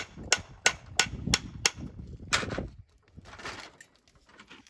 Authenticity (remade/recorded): recorded